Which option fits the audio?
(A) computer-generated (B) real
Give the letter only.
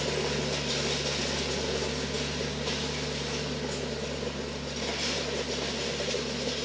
B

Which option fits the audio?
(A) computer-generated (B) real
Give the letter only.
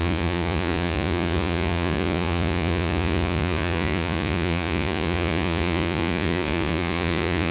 A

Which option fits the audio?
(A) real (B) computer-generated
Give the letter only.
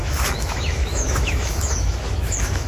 B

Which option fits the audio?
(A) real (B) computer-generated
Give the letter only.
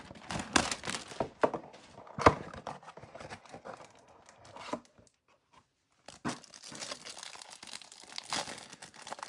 A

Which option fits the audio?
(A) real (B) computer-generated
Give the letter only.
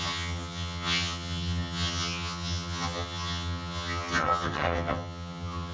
B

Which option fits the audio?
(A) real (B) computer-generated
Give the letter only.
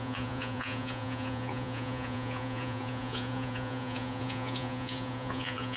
B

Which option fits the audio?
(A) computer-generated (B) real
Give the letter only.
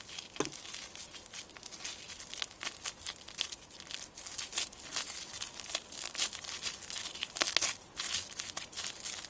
B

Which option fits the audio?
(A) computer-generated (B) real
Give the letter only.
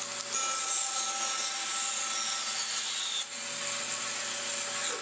B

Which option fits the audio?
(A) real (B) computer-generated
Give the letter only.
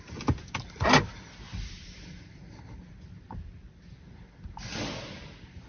A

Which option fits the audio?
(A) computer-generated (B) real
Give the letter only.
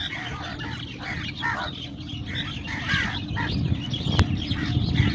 B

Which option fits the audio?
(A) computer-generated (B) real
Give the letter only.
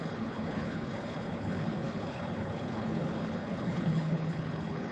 A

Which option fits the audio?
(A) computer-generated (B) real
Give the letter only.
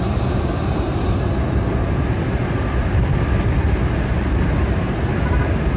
B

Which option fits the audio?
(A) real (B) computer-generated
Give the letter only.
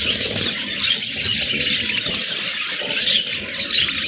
A